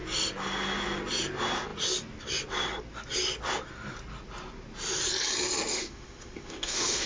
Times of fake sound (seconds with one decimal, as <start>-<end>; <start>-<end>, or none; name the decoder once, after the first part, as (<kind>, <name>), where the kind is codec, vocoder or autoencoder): 5.7-7.1 (autoencoder, DAC-VAE)